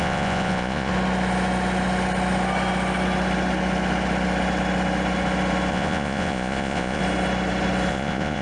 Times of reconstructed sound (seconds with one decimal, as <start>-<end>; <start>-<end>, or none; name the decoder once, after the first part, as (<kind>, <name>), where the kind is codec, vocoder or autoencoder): 0.0-0.9 (vocoder, Vocos); 5.7-7.0; 7.9-8.4